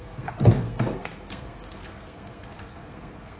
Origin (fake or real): fake